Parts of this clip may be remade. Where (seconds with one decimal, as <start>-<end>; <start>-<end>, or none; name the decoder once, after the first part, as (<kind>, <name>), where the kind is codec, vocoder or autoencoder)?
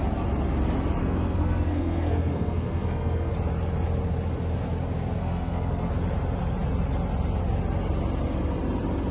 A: 1.0-3.3 (codec, SNAC); 5.2-5.9